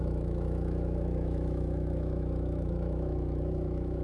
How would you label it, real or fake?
fake